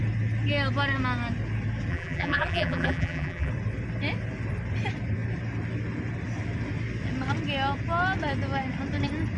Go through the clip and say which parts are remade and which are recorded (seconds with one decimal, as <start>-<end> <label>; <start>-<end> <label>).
0.0-1.9 recorded; 1.9-3.5 remade; 3.5-9.4 recorded

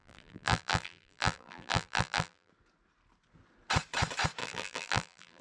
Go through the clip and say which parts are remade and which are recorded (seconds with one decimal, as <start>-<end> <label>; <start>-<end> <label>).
0.0-2.5 remade; 2.5-4.4 recorded; 4.4-5.4 remade

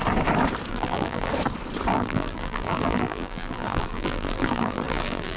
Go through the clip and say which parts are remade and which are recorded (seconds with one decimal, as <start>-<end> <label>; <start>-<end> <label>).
0.0-0.7 recorded; 0.7-1.3 remade; 1.3-1.9 recorded; 1.9-5.4 remade

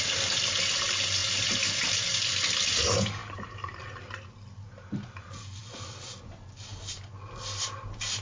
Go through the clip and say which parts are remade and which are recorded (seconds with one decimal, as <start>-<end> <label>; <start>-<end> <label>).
0.0-3.2 recorded; 3.2-3.8 remade; 3.8-8.2 recorded

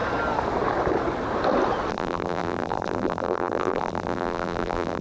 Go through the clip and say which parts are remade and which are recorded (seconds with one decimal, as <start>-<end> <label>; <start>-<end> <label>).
0.0-1.9 recorded; 1.9-5.0 remade